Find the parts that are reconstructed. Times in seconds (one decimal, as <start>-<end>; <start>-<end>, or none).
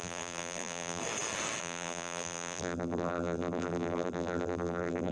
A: 0.0-1.0; 1.6-5.1